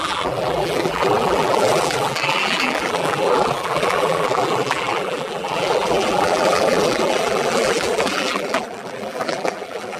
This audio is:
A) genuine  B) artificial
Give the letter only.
B